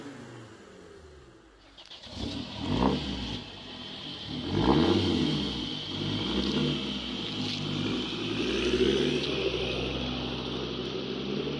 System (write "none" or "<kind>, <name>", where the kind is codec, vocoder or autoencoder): none